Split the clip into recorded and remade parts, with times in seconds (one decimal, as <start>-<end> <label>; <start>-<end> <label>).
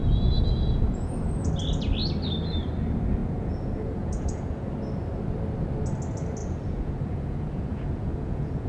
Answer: 0.0-1.5 remade; 1.5-3.2 recorded; 3.2-4.7 remade; 4.7-6.4 recorded; 6.4-8.7 remade